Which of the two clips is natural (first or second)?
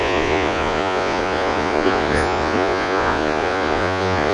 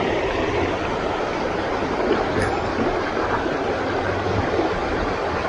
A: second